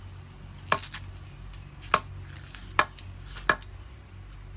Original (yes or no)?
yes